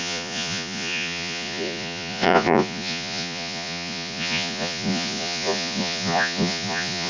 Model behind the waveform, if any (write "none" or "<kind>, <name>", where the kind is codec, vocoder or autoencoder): vocoder, Vocos